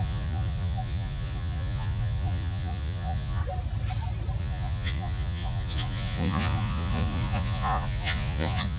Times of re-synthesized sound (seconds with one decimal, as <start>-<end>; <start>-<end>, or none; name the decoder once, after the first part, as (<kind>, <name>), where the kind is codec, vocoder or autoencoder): 0.0-3.4 (vocoder, Vocos); 4.4-8.8